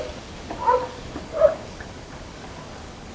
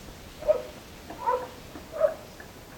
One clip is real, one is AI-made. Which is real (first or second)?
second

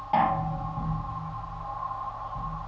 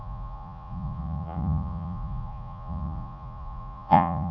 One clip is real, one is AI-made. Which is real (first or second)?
first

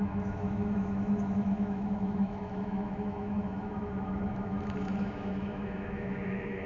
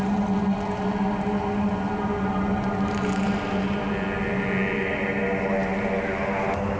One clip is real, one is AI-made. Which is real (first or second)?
second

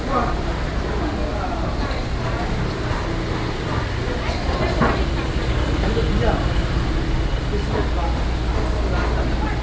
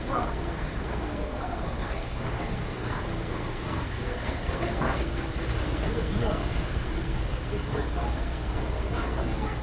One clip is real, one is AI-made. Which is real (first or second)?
first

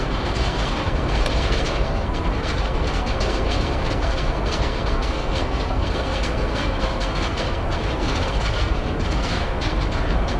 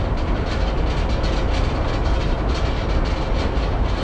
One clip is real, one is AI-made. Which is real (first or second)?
second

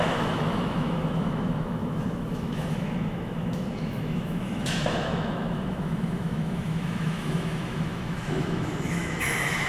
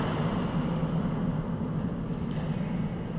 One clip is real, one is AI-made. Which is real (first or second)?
second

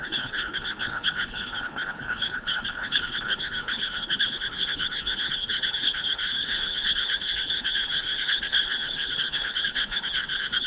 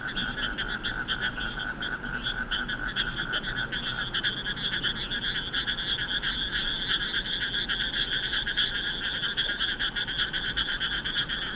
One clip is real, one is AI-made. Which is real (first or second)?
second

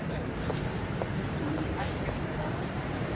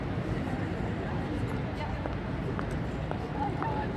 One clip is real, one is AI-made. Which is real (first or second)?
second